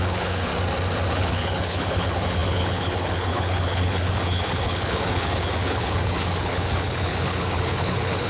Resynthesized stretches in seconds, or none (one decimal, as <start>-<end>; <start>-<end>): 0.0-0.5; 1.1-8.3